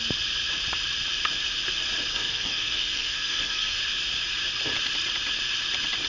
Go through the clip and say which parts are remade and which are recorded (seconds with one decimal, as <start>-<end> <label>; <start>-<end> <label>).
0.0-2.1 recorded; 2.1-3.8 remade; 3.8-6.1 recorded